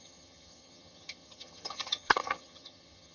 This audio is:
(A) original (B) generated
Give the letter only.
B